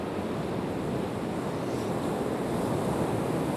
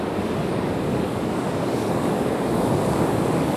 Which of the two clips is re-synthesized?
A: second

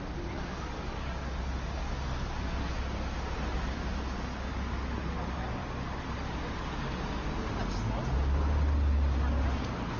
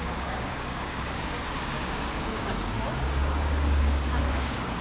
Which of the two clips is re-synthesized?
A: second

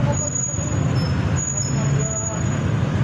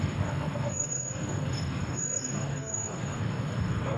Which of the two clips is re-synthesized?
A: second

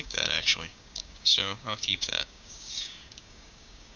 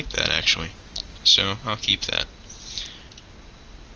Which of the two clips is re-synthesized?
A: first